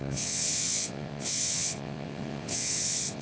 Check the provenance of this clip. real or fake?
fake